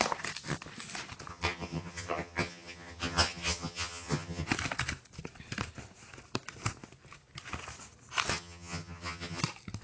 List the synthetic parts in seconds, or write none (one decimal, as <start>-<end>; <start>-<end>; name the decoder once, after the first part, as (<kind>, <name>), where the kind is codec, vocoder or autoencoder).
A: 1.3-4.5 (vocoder, HiFi-GAN); 8.3-9.4